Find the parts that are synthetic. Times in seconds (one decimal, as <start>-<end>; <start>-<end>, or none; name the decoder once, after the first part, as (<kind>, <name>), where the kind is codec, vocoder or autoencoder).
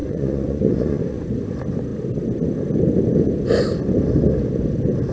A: 0.0-1.2 (vocoder, Vocos)